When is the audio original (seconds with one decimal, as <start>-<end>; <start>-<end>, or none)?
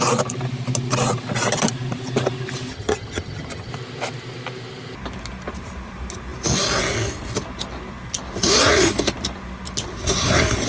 0.0-2.7; 3.7-10.7